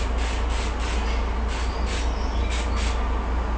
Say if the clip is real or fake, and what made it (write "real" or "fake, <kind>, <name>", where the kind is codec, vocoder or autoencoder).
real